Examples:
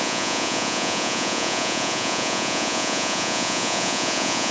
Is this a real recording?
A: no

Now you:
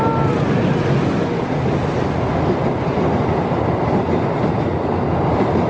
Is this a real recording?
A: yes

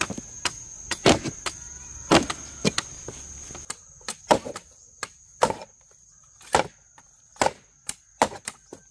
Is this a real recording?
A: yes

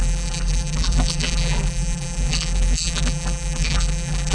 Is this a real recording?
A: no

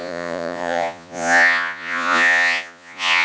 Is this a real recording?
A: no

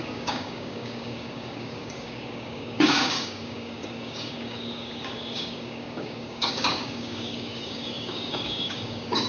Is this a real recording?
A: no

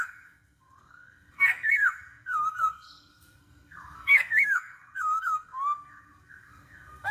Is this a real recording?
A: no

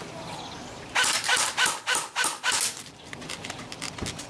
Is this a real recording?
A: yes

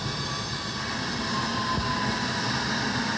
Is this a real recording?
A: yes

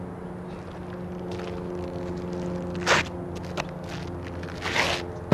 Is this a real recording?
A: yes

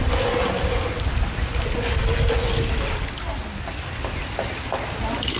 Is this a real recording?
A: yes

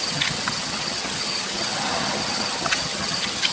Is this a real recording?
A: no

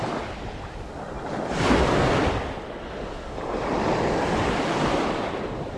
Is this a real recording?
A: yes